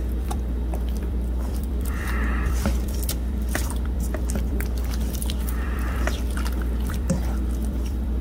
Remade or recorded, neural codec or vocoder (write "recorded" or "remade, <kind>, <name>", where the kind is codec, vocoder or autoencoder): remade, vocoder, BigVGAN v2